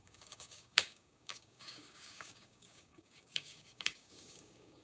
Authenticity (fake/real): fake